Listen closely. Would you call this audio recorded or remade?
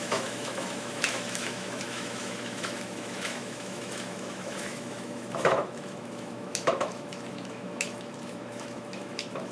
remade